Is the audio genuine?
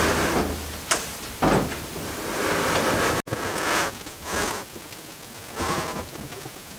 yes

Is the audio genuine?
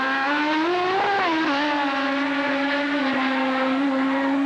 yes